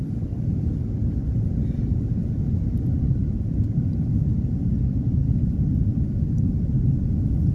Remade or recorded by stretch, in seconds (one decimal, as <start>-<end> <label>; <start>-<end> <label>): 0.0-7.5 recorded